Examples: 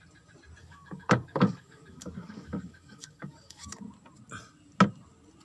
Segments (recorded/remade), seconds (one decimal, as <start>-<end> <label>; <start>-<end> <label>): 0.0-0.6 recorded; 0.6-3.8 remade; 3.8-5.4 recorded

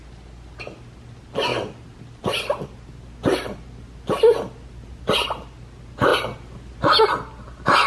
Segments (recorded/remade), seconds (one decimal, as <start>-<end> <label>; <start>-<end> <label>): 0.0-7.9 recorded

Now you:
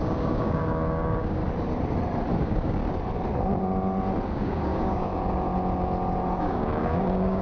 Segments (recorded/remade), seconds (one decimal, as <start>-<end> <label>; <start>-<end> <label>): 0.0-1.4 remade; 1.4-2.4 recorded; 2.4-2.8 remade; 2.8-4.3 recorded; 4.3-5.1 remade; 5.1-6.4 recorded; 6.4-7.4 remade